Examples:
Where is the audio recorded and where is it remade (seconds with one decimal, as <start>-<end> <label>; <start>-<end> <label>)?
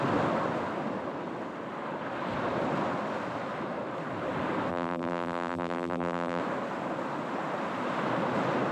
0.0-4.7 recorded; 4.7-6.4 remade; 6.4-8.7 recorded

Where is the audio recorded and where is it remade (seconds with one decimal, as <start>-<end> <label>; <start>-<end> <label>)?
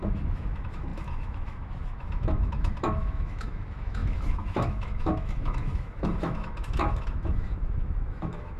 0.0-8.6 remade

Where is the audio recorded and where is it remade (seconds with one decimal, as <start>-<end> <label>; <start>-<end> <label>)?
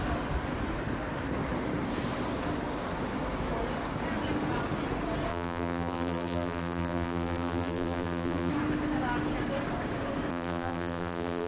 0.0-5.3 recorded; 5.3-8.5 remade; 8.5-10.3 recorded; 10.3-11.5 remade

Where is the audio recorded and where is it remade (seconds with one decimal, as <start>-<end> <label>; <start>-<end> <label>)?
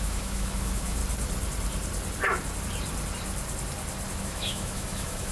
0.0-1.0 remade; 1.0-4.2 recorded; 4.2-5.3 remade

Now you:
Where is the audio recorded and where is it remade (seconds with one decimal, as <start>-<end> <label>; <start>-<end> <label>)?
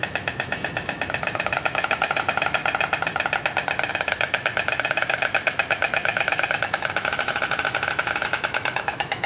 0.0-2.6 remade; 2.6-3.9 recorded; 3.9-9.3 remade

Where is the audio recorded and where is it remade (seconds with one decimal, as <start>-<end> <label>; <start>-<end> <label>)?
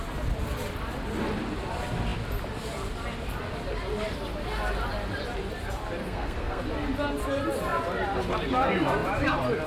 0.0-6.0 recorded; 6.0-6.6 remade; 6.6-9.7 recorded